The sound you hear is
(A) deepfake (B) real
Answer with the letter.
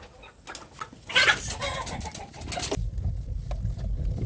B